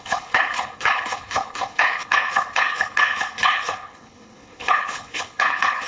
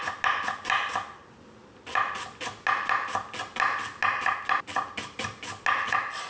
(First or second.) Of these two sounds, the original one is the second